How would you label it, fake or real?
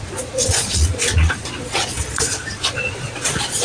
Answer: fake